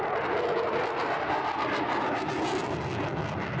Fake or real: real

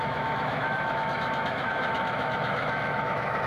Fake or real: fake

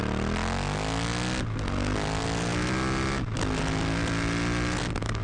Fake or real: real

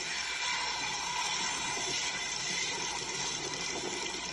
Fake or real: fake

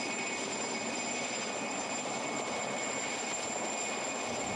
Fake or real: real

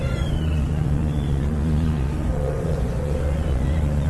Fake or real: fake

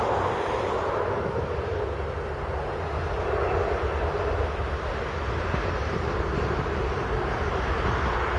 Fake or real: real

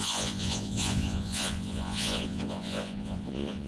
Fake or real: fake